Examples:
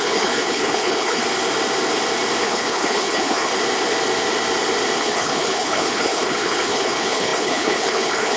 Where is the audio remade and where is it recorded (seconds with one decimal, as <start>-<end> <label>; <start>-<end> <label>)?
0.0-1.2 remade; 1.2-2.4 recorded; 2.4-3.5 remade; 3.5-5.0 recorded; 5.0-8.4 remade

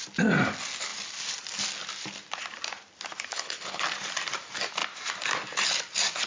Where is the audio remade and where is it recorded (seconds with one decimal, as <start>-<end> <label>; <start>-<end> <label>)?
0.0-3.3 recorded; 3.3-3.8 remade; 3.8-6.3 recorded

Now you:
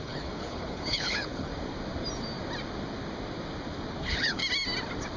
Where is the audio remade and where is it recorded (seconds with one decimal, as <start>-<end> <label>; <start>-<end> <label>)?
0.0-1.5 remade; 1.5-4.0 recorded; 4.0-4.4 remade; 4.4-5.2 recorded

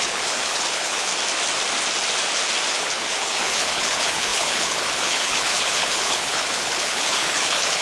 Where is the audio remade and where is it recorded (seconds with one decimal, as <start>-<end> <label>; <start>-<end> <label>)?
0.0-1.1 remade; 1.1-2.7 recorded; 2.7-7.8 remade

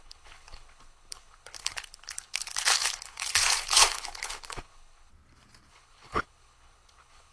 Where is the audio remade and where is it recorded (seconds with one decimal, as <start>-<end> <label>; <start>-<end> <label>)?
0.0-5.1 remade; 5.1-5.7 recorded; 5.7-7.3 remade

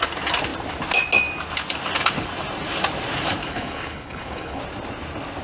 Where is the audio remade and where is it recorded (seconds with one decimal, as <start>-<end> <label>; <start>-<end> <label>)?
0.0-3.4 recorded; 3.4-4.6 remade; 4.6-5.4 recorded

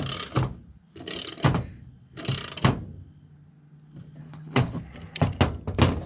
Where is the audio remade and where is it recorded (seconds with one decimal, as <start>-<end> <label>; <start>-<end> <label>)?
0.0-4.2 recorded; 4.2-4.8 remade; 4.8-6.1 recorded